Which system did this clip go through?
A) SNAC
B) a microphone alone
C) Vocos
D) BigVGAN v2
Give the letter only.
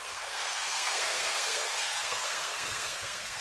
A